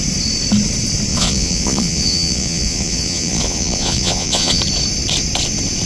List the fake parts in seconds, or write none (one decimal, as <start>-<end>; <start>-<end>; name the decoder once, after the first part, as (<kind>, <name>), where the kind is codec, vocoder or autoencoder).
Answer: 1.1-4.6 (vocoder, Vocos)